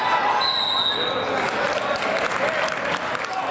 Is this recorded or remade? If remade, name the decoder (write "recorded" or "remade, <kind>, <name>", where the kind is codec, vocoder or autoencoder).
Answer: recorded